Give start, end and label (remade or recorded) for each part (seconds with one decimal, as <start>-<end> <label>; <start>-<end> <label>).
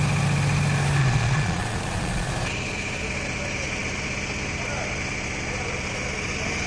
0.0-1.0 recorded; 1.0-2.3 remade; 2.3-6.7 recorded